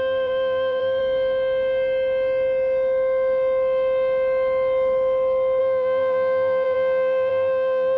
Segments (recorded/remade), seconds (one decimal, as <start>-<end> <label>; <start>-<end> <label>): 0.0-1.0 remade; 1.0-5.6 recorded; 5.6-8.0 remade